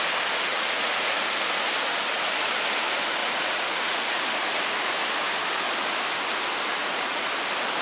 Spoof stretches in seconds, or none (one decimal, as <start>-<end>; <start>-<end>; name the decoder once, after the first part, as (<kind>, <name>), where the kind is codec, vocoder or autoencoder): 0.5-1.2 (vocoder, Vocos); 3.2-4.2; 6.8-7.3